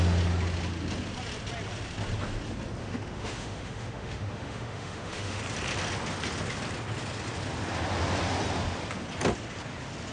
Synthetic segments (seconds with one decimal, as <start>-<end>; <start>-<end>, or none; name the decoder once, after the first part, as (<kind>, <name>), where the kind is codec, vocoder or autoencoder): 2.8-5.4 (autoencoder, DAC-VAE)